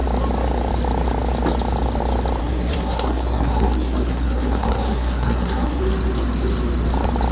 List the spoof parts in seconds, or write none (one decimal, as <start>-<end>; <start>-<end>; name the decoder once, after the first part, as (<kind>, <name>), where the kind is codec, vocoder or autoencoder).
2.4-5.8 (codec, SNAC)